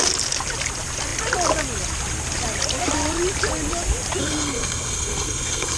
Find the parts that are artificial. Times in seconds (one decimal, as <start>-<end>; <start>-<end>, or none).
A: 4.2-5.8